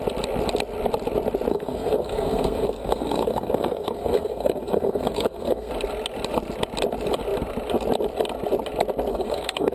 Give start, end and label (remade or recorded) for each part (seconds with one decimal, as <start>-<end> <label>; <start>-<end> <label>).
0.0-1.5 recorded; 1.5-5.7 remade; 5.7-9.1 recorded; 9.1-9.7 remade